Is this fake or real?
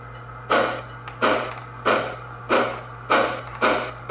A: real